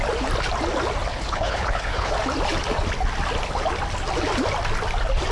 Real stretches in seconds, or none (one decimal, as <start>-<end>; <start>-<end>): 0.0-1.1; 2.1-5.3